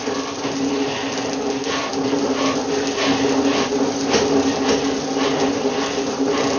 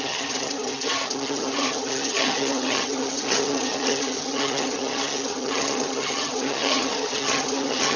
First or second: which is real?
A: first